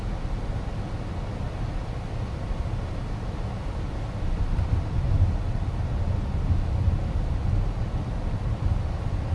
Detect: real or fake real